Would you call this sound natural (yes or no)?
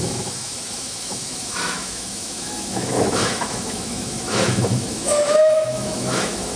no